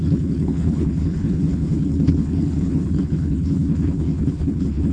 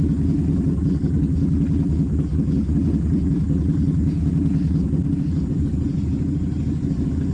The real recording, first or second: second